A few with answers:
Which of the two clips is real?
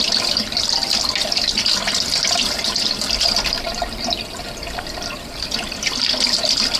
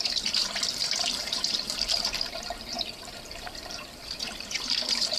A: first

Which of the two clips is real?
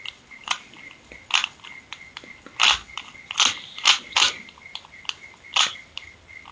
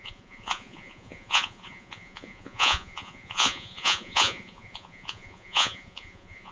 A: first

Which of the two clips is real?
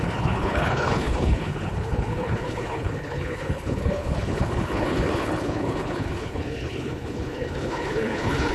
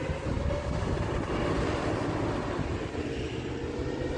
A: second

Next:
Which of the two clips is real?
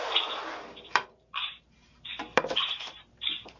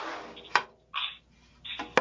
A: second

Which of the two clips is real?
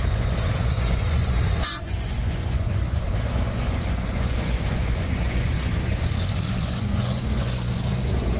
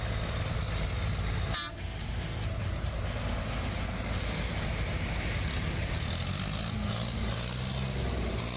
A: second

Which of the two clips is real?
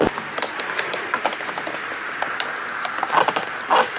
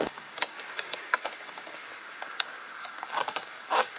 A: first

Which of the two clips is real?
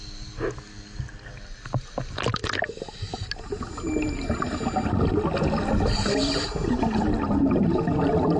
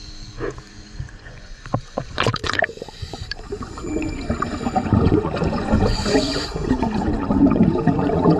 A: first